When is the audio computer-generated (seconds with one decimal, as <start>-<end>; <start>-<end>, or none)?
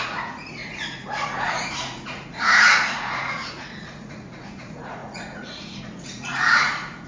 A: 0.0-7.1